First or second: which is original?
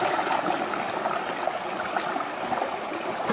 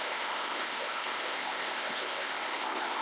first